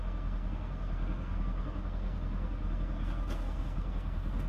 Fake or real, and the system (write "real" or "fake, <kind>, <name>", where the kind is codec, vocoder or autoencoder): fake, codec, SNAC